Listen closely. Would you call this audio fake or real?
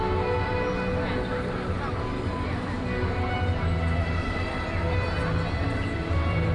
real